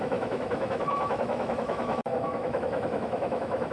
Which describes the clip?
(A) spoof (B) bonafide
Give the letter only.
A